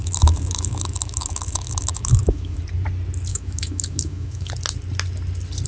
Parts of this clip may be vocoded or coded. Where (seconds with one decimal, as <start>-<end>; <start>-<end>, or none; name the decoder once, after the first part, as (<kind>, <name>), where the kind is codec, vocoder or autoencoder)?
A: 0.0-2.6 (autoencoder, DAC-VAE); 3.3-4.5